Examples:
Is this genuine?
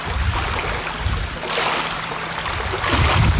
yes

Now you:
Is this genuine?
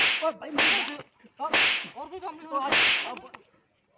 yes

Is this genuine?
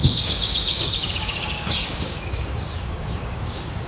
no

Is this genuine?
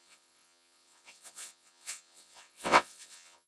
no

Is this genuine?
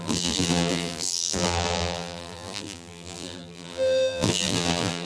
no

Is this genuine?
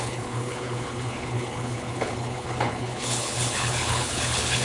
no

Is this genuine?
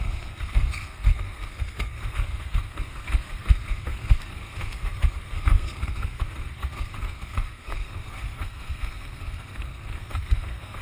no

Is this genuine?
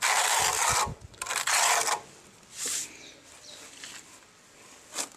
no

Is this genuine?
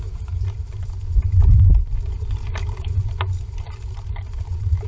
yes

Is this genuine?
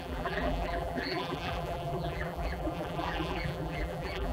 no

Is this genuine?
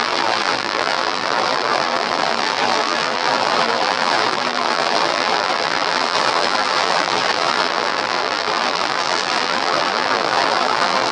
no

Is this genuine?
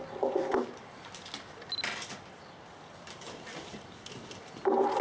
yes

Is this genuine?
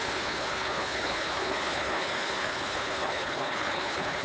no